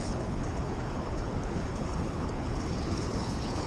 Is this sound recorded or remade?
remade